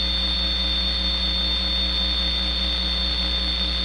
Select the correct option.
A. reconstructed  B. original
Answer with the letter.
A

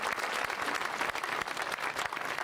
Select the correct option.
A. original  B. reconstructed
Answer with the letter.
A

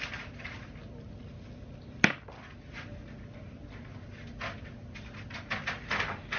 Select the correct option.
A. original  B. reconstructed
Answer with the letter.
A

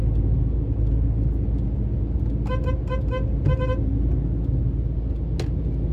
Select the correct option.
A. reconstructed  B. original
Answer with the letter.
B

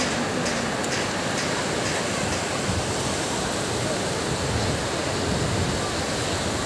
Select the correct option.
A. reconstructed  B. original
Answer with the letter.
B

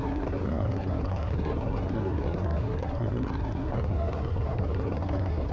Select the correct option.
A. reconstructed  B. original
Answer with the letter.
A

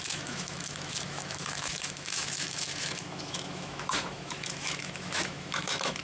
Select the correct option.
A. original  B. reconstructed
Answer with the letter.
B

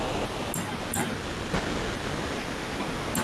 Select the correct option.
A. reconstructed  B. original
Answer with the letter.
B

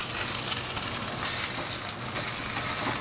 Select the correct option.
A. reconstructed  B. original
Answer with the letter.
B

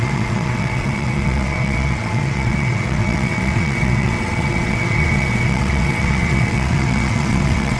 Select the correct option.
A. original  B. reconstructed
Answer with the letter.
B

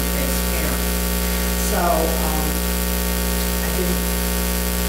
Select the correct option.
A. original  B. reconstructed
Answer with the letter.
A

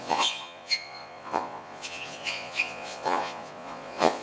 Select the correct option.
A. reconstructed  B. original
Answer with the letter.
A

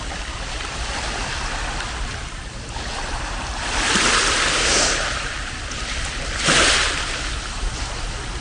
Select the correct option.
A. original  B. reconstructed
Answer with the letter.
B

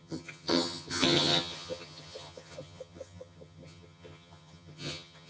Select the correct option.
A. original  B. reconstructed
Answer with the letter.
B